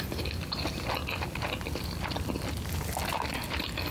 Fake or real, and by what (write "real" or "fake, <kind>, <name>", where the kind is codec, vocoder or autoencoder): real